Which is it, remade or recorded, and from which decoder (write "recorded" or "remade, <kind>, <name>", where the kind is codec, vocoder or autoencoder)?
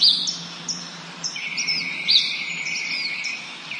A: remade, vocoder, BigVGAN v2